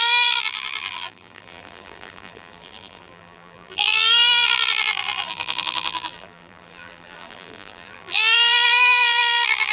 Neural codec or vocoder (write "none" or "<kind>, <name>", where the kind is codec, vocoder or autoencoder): vocoder, BigVGAN v2